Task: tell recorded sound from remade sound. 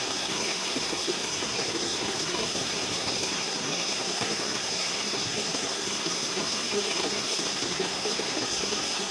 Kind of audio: remade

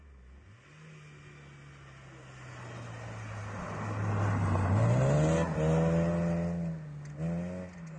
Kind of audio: recorded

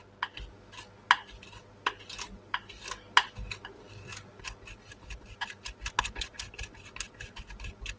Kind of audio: recorded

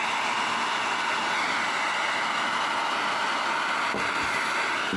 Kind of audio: recorded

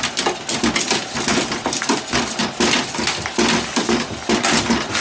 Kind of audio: recorded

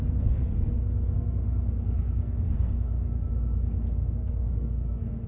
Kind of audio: remade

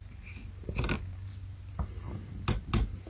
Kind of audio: recorded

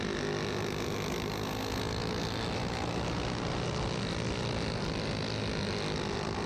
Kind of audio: recorded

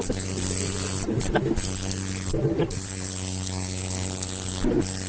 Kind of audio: recorded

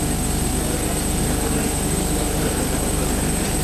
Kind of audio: remade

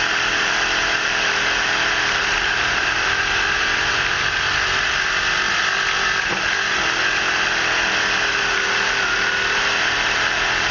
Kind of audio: recorded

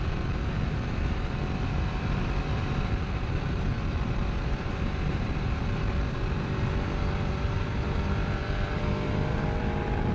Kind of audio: remade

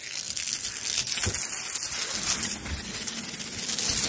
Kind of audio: recorded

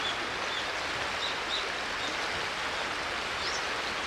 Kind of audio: recorded